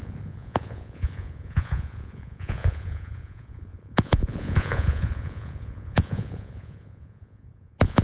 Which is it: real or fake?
fake